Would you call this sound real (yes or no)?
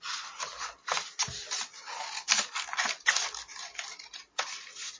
yes